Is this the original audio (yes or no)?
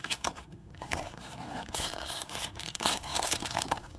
no